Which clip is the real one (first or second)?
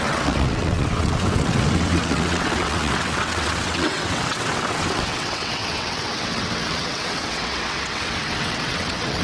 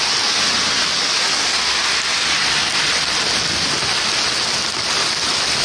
second